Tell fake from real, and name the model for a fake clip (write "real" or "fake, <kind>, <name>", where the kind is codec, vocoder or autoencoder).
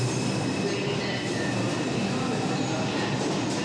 real